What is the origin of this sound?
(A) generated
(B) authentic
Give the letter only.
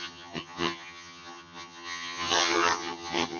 A